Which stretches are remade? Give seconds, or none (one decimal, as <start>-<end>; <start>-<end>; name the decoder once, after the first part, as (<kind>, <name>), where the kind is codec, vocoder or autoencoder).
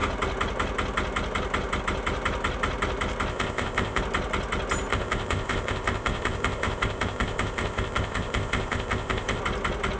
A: 3.3-4.0 (codec, ZipCodec); 4.9-9.4